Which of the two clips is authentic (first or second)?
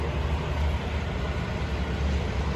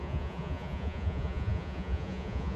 first